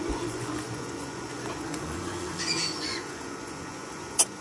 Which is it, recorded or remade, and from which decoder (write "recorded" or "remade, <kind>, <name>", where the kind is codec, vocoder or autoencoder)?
remade, vocoder, Vocos